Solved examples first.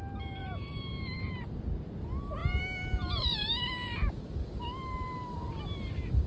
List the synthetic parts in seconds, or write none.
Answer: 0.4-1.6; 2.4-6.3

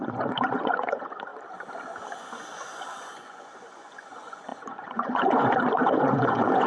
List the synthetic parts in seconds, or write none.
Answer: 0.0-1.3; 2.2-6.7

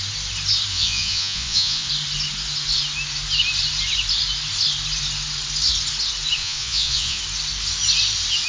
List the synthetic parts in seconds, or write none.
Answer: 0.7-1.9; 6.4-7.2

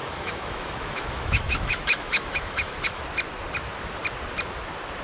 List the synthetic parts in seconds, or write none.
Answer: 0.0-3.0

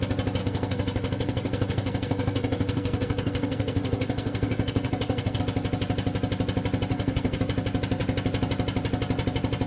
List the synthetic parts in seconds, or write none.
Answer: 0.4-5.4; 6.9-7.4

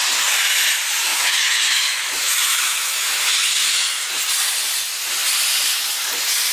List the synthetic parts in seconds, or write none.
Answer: 1.1-4.1